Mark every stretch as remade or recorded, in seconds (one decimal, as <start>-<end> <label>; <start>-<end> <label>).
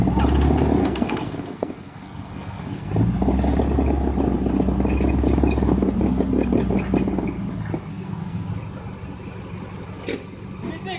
0.0-0.8 recorded; 0.8-2.9 remade; 2.9-7.9 recorded; 7.9-8.5 remade; 8.5-11.0 recorded